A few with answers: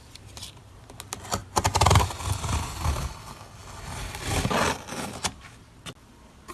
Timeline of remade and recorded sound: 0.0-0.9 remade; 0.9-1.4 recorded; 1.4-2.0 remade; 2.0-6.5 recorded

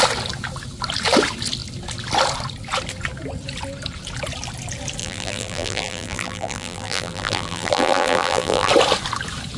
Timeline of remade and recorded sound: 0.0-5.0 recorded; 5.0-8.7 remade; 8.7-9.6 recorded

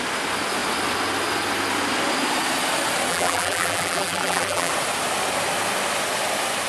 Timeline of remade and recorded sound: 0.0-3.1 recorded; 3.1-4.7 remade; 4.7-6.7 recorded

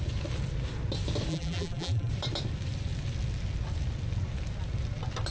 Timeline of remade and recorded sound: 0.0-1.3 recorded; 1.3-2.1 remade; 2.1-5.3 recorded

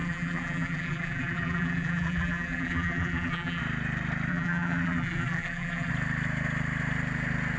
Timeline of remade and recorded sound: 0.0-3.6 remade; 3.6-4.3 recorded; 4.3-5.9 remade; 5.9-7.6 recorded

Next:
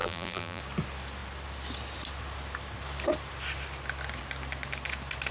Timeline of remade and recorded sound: 0.0-0.6 remade; 0.6-5.3 recorded

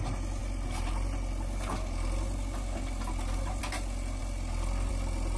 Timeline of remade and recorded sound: 0.0-5.4 recorded